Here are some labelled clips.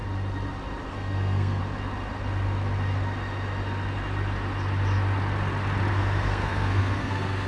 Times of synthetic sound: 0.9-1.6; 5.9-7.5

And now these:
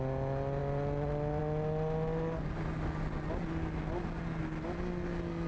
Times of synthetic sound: none

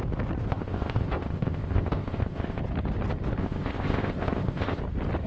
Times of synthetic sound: 0.5-2.6; 3.4-4.8

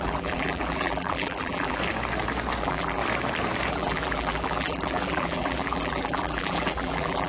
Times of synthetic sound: 0.0-1.8; 2.6-3.0; 3.7-7.3

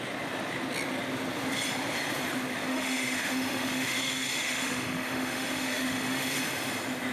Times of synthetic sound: 2.7-6.4

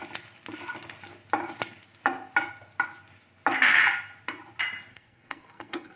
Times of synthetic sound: 4.9-6.0

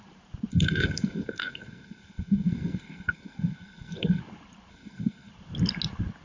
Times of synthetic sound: 0.5-4.2; 4.7-5.3

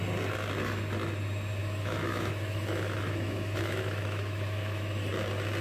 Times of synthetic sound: 1.6-5.0